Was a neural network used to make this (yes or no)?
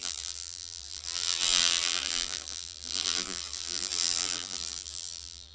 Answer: yes